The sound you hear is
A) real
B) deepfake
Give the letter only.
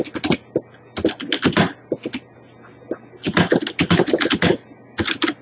A